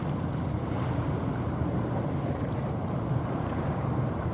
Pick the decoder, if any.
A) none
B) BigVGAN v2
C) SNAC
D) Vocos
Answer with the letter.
B